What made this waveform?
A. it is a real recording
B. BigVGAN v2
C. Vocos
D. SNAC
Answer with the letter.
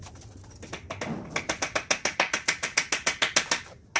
A